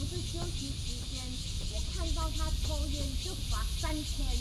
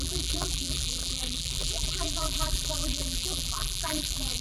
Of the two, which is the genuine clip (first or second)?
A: first